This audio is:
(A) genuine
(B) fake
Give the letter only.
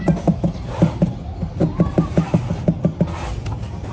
A